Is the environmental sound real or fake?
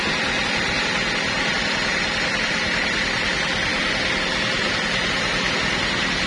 real